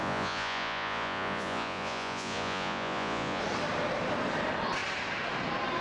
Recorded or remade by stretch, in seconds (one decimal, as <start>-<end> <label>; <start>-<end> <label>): 0.0-3.4 remade; 3.4-5.8 recorded